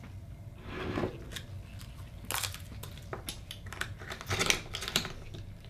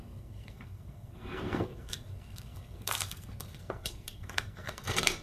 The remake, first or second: second